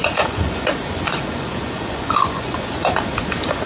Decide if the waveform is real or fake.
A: fake